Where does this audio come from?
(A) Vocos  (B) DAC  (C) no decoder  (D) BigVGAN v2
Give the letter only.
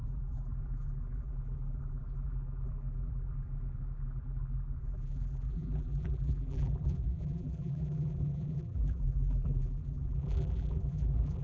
D